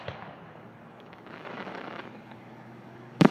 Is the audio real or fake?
fake